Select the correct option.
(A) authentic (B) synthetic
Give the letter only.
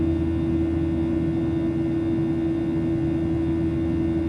A